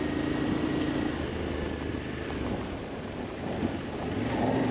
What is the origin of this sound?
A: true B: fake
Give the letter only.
A